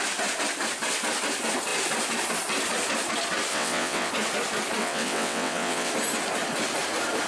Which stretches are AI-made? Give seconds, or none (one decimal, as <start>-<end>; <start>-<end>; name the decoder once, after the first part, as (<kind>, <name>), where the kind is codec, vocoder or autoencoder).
3.5-4.1 (vocoder, WaveNeXt); 4.8-5.9